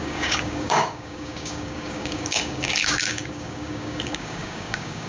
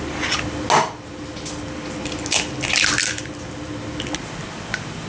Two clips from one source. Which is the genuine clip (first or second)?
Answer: second